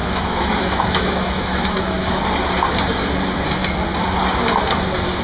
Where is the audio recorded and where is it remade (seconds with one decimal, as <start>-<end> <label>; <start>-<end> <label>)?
0.0-2.2 remade; 2.2-5.2 recorded